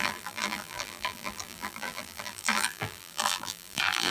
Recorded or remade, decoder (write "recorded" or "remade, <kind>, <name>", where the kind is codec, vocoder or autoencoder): remade, vocoder, BigVGAN v2